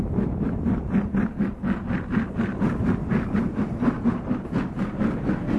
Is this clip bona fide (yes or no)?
yes